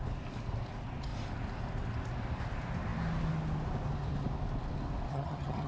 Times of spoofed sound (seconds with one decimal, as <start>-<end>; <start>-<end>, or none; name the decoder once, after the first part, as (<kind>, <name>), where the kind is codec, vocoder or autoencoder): 5.1-5.7 (vocoder, HiFi-GAN)